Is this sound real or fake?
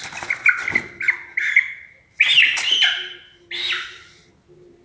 real